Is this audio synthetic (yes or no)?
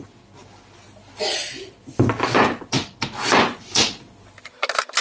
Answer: no